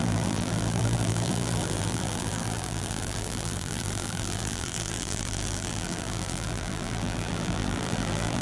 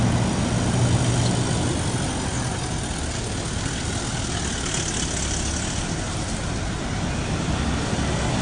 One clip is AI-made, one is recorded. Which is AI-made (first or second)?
first